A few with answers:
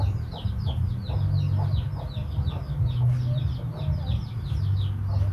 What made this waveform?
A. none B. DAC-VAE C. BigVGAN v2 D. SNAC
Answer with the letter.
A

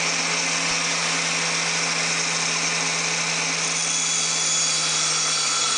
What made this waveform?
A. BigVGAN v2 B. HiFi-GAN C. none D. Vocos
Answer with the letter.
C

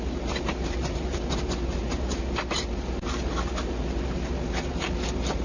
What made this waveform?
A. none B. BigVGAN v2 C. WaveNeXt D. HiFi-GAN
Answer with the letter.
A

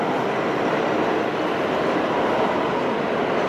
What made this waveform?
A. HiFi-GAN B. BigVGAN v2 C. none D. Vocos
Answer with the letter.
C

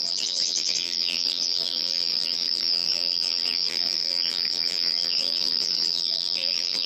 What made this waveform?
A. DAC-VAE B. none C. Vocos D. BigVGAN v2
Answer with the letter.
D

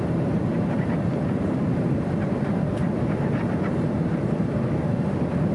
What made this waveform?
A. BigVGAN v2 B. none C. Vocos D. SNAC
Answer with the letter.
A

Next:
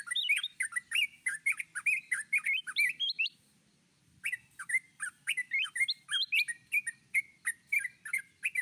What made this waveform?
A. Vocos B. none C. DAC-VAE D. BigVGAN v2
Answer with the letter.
B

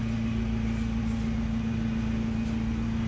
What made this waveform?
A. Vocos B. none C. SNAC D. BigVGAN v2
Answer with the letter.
B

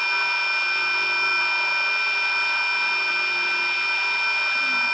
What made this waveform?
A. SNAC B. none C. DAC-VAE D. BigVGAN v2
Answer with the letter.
B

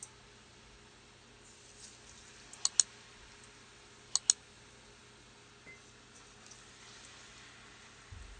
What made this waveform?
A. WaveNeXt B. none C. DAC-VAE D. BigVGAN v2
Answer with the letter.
B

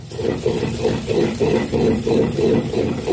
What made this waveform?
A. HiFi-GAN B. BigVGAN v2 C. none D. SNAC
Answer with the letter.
C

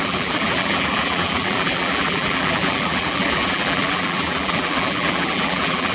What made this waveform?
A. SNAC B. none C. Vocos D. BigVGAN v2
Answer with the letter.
D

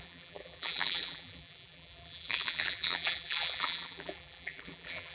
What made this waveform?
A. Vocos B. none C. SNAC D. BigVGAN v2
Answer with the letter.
D